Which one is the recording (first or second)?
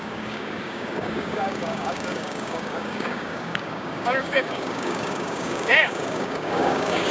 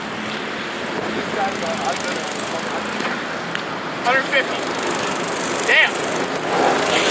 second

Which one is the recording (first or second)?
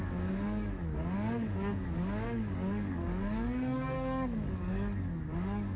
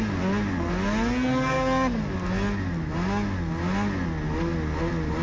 second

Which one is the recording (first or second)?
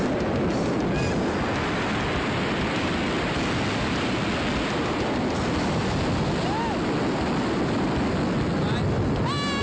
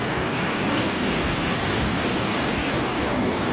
first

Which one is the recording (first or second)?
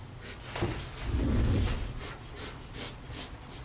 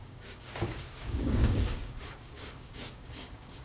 first